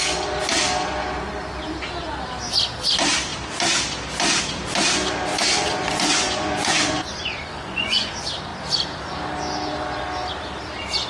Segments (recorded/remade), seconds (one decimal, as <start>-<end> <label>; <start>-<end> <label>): 0.0-5.3 recorded; 5.3-8.1 remade; 8.1-11.1 recorded